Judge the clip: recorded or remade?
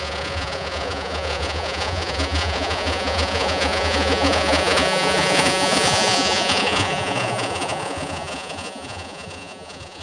remade